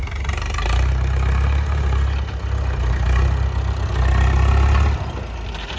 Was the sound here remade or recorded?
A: recorded